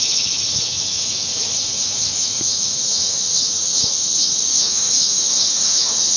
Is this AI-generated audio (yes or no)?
yes